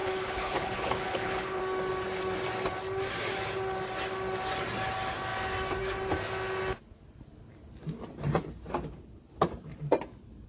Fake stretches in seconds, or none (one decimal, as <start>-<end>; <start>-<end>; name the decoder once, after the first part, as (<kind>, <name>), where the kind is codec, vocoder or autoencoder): 0.0-1.6 (codec, HILCodec)